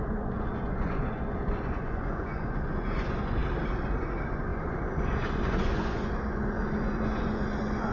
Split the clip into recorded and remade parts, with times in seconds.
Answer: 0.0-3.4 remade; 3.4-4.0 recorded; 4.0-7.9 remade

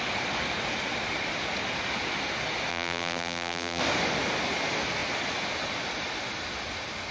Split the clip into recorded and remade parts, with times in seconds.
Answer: 0.0-2.7 recorded; 2.7-3.8 remade; 3.8-7.1 recorded